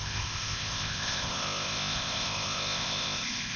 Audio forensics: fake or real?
fake